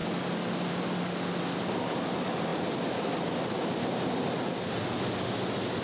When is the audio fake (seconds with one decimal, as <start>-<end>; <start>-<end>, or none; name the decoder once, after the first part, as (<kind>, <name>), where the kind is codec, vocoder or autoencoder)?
none